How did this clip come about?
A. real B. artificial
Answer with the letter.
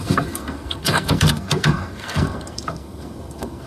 B